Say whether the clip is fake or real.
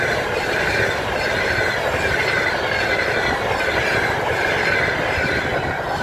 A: fake